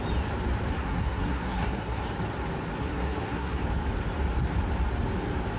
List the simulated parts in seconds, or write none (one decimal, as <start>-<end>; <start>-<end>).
0.7-2.0; 2.8-3.6